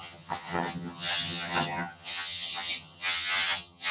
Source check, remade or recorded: remade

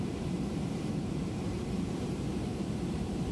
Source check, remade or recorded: remade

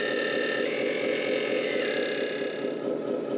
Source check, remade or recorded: recorded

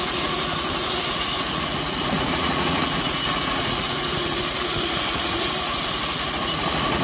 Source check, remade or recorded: remade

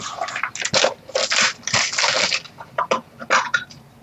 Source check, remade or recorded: recorded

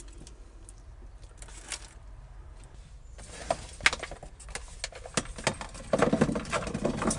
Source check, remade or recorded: recorded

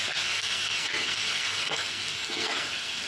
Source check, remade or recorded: remade